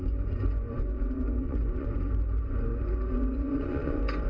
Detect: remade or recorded remade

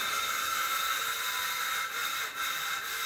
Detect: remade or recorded recorded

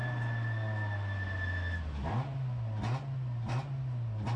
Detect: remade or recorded recorded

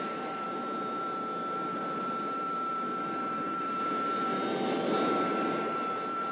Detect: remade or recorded recorded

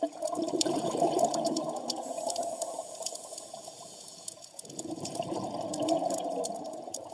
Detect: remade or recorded remade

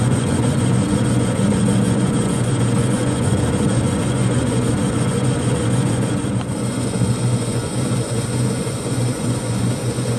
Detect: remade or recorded remade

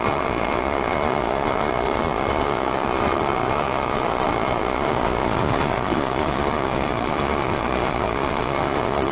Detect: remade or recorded remade